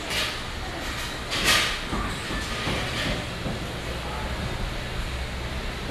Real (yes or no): yes